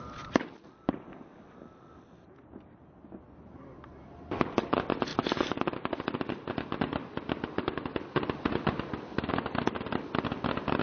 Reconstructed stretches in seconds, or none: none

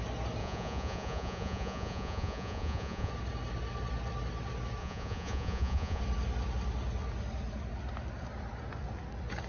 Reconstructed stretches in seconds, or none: 0.4-3.1 (vocoder, Vocos); 4.8-6.0

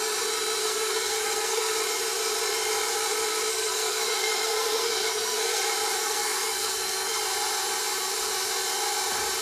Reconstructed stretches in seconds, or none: 0.6-1.7 (codec, SNAC); 3.5-5.6; 6.0-7.2